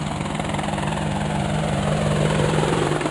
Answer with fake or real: fake